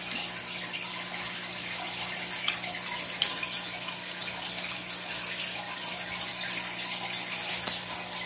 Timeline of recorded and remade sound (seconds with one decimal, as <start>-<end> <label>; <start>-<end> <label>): 0.0-8.3 recorded